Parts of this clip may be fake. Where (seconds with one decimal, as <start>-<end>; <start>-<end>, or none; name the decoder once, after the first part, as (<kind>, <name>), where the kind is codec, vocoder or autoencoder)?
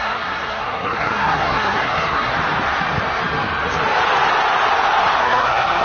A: 0.0-2.3 (codec, SNAC); 5.2-5.8